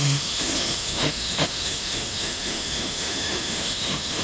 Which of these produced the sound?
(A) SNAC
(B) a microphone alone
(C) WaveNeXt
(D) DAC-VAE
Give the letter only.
D